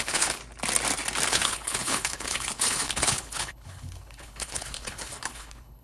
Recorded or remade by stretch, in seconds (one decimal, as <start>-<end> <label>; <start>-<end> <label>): 0.0-0.4 remade; 0.4-1.3 recorded; 1.3-5.8 remade